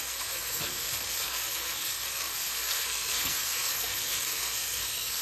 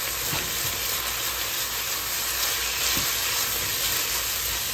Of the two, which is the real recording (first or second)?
second